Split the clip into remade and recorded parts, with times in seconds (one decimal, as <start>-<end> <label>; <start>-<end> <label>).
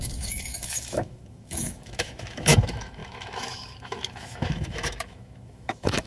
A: 0.0-6.1 remade